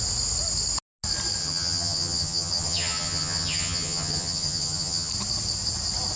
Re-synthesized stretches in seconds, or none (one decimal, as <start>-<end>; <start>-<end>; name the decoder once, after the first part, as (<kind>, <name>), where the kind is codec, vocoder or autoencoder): 1.4-5.1 (vocoder, HiFi-GAN)